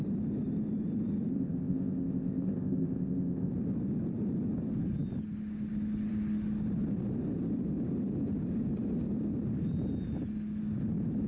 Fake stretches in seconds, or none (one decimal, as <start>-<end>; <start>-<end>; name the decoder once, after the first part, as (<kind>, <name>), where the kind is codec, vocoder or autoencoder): 1.3-3.5 (codec, ZipCodec)